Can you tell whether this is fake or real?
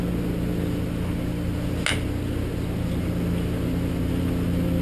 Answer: real